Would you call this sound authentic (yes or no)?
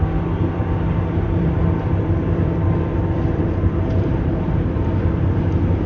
no